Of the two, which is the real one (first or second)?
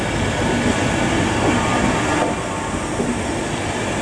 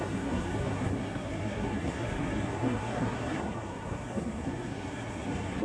first